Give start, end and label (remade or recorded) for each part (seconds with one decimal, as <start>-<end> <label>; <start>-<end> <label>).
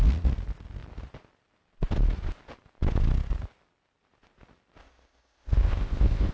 0.0-4.8 recorded; 4.8-6.3 remade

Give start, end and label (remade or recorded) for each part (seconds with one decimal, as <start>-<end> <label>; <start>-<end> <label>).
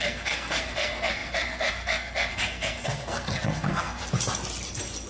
0.0-4.0 remade; 4.0-5.1 recorded